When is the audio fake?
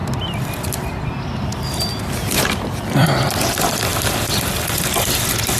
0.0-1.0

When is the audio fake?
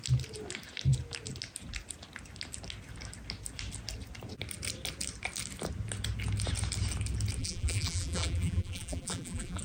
7.4-9.6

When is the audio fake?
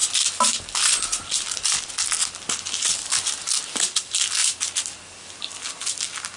none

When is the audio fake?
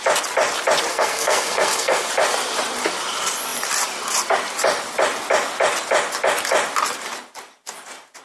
0.9-2.1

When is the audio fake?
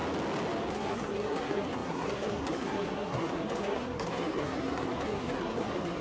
0.7-6.0